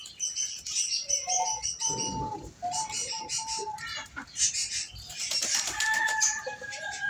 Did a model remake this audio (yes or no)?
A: yes